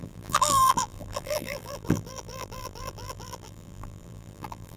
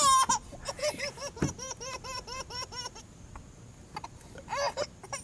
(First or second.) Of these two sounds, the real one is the second